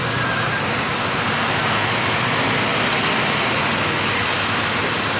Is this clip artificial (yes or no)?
no